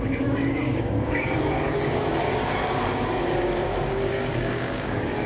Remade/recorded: remade